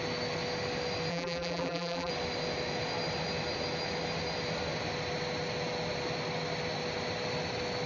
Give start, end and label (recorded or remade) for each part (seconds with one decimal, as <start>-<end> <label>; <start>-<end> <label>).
0.0-1.1 recorded; 1.1-2.1 remade; 2.1-7.9 recorded